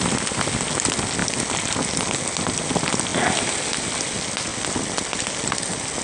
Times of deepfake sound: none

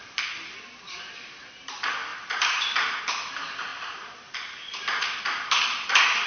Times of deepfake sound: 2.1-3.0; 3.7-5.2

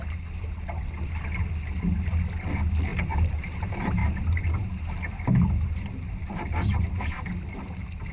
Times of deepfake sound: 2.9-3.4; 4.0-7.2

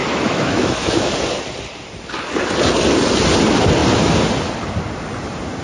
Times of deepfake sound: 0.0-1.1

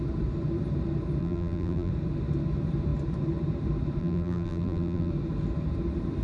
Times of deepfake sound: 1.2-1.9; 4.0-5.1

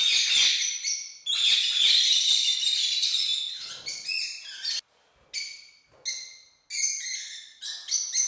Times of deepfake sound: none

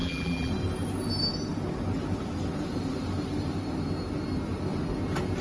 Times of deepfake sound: 0.0-0.5

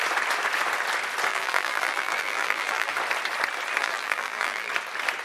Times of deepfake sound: 1.3-2.9; 3.8-4.7